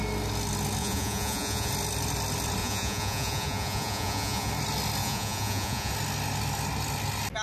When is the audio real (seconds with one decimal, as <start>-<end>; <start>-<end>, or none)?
0.0-0.8; 1.7-2.6; 4.5-5.0; 5.9-7.4